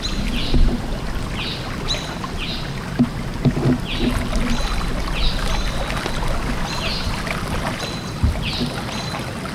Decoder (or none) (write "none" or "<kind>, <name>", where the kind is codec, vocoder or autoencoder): none